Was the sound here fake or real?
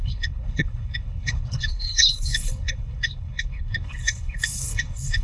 fake